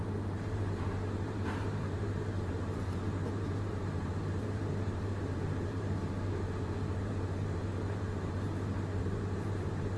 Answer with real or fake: fake